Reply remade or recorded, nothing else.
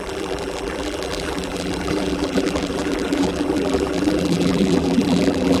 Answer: remade